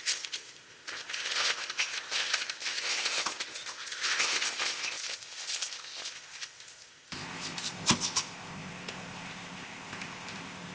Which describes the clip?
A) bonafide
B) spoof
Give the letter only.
B